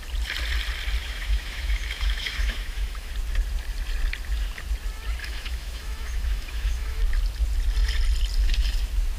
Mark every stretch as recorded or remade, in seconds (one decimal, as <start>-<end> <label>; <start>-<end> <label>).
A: 0.0-1.0 recorded; 1.0-3.1 remade; 3.1-5.2 recorded; 5.2-7.0 remade; 7.0-9.2 recorded